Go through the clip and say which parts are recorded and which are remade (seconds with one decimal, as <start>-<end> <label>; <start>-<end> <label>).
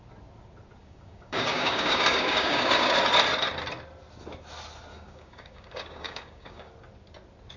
0.0-0.8 recorded; 0.8-3.0 remade; 3.0-4.9 recorded; 4.9-6.7 remade; 6.7-7.6 recorded